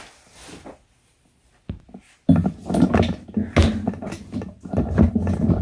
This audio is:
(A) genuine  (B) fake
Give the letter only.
A